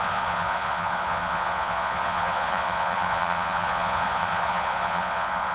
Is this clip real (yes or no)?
no